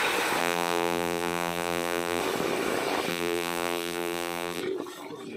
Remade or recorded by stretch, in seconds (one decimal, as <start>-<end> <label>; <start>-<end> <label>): 0.0-0.4 recorded; 0.4-2.2 remade; 2.2-3.1 recorded; 3.1-4.6 remade; 4.6-5.4 recorded